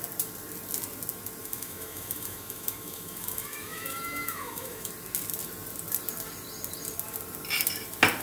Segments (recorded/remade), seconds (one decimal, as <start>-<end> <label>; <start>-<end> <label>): 0.0-1.4 recorded; 1.4-4.9 remade; 4.9-8.2 recorded